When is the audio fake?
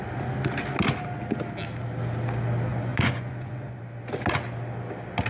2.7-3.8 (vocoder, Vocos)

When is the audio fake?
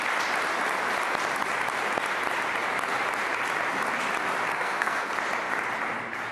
4.5-5.1 (codec, SNAC)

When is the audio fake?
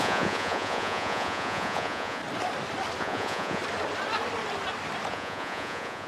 0.0-2.2 (vocoder, Vocos); 3.0-3.6; 5.1-6.1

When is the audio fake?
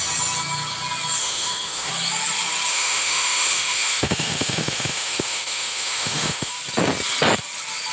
1.2-1.9 (autoencoder, DAC-VAE); 2.7-6.5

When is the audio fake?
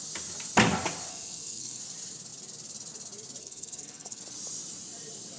1.1-1.8 (codec, SNAC); 3.4-4.2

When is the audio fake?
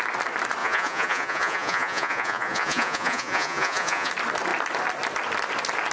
0.6-4.1 (vocoder, Vocos)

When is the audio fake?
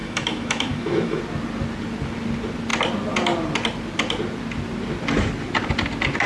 0.0-1.2 (autoencoder, DAC-VAE)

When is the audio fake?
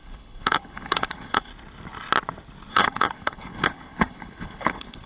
0.0-1.5 (codec, HILCodec); 2.7-5.1